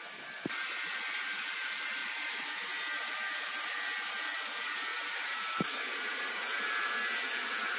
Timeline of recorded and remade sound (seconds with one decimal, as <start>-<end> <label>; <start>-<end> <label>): 0.0-2.0 recorded; 2.0-3.7 remade; 3.7-4.9 recorded; 4.9-6.7 remade; 6.7-7.8 recorded